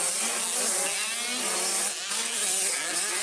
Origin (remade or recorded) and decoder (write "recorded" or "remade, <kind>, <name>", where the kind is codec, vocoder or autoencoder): recorded